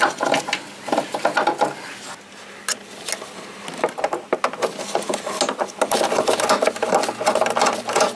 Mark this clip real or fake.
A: real